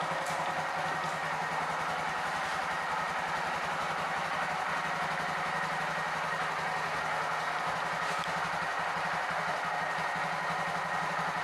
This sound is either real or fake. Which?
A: real